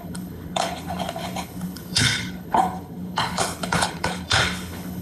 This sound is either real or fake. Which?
fake